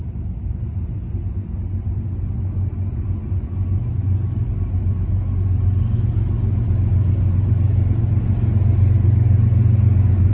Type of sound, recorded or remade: recorded